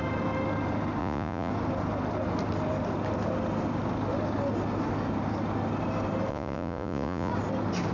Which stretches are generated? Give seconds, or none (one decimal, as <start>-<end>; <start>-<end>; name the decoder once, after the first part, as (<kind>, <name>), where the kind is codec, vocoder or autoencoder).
1.0-1.5 (vocoder, Vocos); 6.3-7.3